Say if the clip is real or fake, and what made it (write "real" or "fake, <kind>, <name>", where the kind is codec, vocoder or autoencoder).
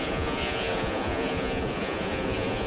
fake, vocoder, Vocos